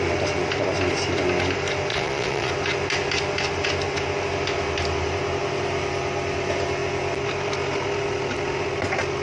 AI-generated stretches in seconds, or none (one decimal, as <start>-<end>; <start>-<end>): 1.9-2.5